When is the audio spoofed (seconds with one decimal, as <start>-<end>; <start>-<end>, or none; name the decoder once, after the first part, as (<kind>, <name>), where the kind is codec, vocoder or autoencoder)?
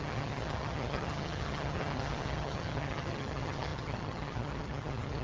0.0-5.2 (vocoder, HiFi-GAN)